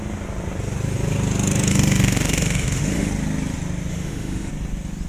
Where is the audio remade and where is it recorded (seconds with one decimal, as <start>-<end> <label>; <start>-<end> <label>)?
0.0-1.7 recorded; 1.7-3.1 remade; 3.1-3.9 recorded; 3.9-4.5 remade; 4.5-5.1 recorded